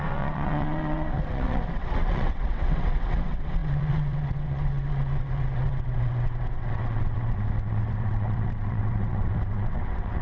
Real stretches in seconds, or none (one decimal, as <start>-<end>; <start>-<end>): none